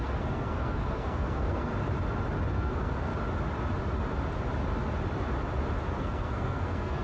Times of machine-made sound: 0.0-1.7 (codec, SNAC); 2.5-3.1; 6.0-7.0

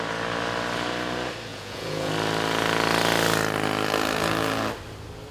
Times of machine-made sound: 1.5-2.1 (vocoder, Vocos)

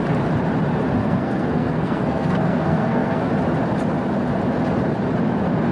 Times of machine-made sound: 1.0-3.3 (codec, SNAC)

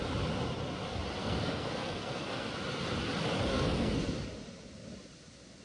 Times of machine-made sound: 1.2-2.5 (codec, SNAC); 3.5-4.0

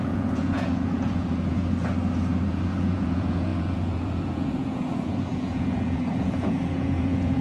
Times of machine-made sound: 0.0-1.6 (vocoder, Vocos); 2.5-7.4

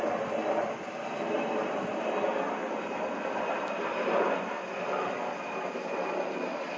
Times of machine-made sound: none

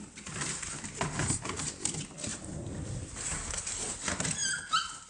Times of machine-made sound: none